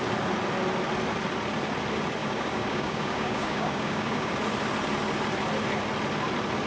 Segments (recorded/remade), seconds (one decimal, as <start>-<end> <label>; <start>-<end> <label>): 0.0-2.2 recorded; 2.2-4.3 remade; 4.3-6.7 recorded